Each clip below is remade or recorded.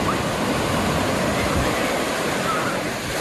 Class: remade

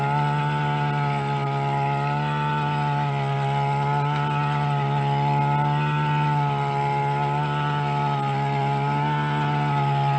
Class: recorded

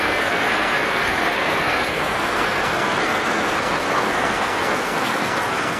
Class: remade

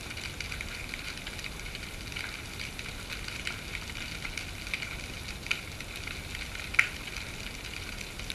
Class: recorded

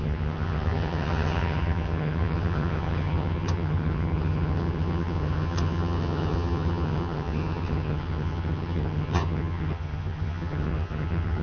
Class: remade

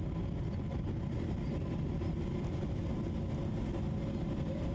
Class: recorded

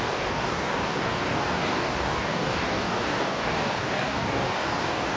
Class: remade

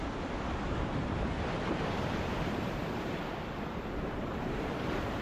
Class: remade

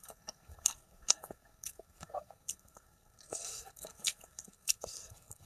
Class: remade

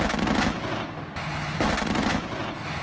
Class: recorded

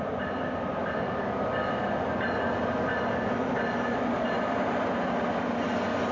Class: recorded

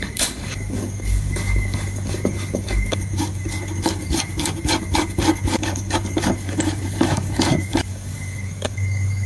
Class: remade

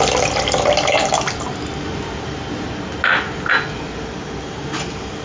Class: recorded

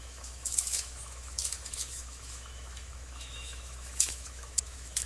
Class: remade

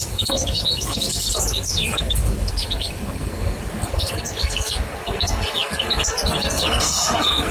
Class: remade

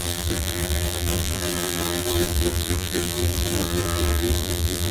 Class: remade